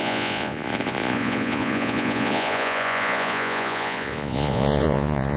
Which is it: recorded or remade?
remade